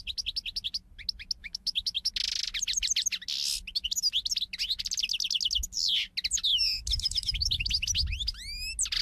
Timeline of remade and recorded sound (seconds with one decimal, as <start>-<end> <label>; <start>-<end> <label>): 0.0-1.4 recorded; 1.4-2.1 remade; 2.1-6.5 recorded; 6.5-7.7 remade; 7.7-9.0 recorded